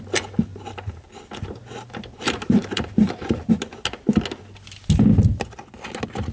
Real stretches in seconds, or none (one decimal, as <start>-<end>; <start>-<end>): 0.0-0.5; 3.5-6.3